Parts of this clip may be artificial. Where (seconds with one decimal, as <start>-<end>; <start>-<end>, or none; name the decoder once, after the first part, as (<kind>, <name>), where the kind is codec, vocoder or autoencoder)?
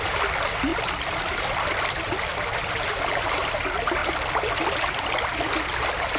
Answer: none